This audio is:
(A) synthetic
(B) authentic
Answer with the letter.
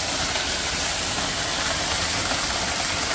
B